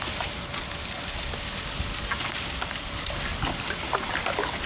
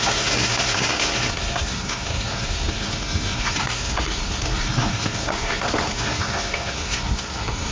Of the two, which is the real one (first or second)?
first